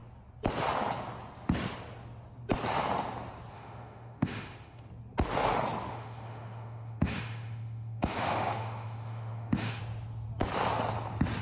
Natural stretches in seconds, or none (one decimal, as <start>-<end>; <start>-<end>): 0.0-3.5; 4.9-5.9; 9.8-11.4